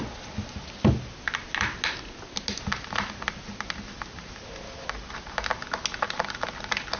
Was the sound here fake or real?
real